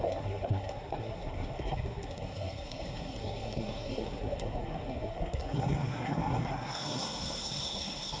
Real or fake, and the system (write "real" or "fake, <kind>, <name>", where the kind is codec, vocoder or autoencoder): fake, codec, SNAC